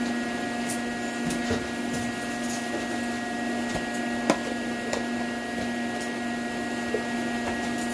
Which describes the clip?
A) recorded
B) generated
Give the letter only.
A